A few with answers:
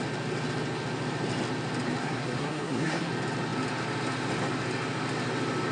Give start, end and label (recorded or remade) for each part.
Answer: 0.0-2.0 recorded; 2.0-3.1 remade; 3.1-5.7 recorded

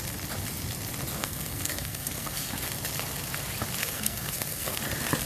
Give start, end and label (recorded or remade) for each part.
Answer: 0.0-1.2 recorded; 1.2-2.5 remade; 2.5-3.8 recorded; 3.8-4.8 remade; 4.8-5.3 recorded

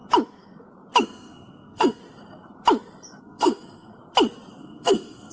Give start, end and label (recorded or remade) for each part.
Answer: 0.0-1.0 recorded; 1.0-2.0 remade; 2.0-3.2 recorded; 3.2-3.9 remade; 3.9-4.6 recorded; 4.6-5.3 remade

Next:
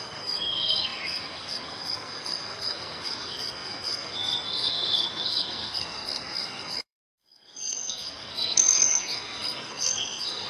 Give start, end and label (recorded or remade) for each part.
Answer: 0.0-10.5 remade

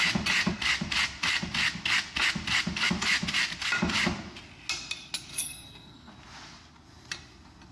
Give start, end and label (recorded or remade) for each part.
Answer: 0.0-5.3 recorded; 5.3-6.1 remade; 6.1-7.7 recorded

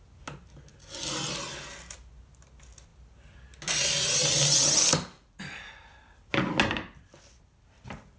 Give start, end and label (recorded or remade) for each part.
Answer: 0.0-8.2 recorded